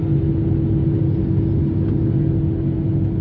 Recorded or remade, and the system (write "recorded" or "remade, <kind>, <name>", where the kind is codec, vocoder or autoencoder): recorded